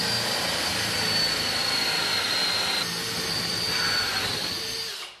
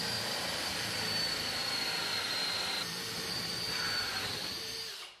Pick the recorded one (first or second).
first